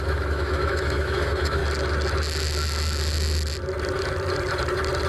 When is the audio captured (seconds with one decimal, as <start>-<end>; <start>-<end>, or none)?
1.6-5.1